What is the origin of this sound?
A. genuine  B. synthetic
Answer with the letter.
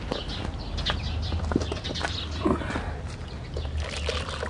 A